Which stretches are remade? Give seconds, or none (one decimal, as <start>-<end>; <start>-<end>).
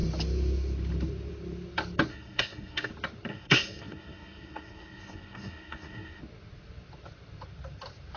2.1-2.9; 3.3-6.2